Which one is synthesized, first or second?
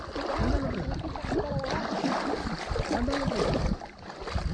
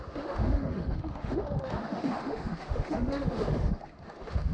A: second